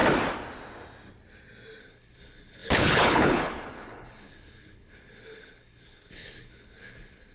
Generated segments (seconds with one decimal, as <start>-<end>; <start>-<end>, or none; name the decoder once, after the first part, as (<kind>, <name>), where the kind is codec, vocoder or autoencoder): 1.8-7.3 (codec, HILCodec)